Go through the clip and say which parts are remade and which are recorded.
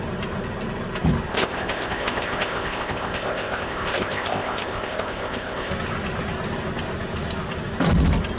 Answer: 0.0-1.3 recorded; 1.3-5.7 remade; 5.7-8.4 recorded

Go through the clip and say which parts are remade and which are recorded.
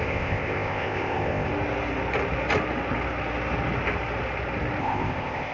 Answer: 0.0-1.5 remade; 1.5-4.8 recorded; 4.8-5.5 remade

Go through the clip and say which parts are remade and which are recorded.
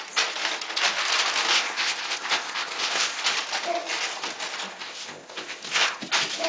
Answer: 0.0-1.5 recorded; 1.5-3.2 remade; 3.2-4.7 recorded; 4.7-6.1 remade; 6.1-6.5 recorded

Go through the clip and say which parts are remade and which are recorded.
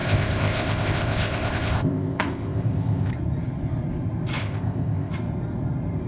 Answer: 0.0-3.1 remade; 3.1-4.4 recorded; 4.4-5.1 remade; 5.1-6.1 recorded